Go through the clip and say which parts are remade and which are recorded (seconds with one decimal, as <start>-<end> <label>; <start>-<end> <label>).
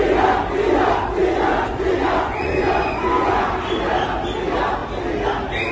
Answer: 0.0-1.2 recorded; 1.2-3.5 remade; 3.5-5.7 recorded